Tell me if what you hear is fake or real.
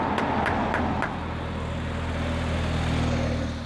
real